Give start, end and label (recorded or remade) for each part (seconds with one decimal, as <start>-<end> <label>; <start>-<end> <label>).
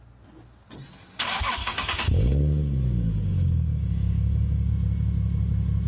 0.0-1.6 recorded; 1.6-4.7 remade; 4.7-5.9 recorded